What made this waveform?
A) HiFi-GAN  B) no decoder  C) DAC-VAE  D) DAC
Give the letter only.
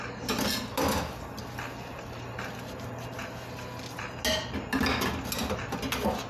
B